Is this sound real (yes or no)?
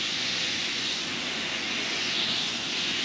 no